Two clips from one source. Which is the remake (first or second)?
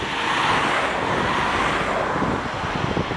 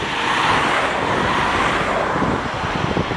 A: second